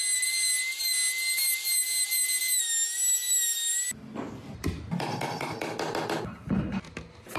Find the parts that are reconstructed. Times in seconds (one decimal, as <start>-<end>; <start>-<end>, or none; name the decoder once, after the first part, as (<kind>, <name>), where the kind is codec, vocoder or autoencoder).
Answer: none